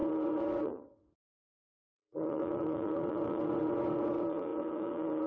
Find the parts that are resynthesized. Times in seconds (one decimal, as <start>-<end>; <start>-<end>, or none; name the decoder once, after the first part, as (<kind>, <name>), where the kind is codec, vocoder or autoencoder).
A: 0.0-5.3 (vocoder, WaveNeXt)